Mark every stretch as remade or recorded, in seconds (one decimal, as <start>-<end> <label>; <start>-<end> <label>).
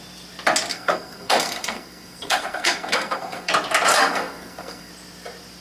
0.0-0.7 recorded; 0.7-3.5 remade; 3.5-3.9 recorded; 3.9-4.9 remade; 4.9-5.6 recorded